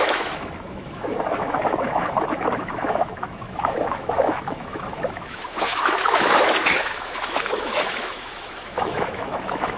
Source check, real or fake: fake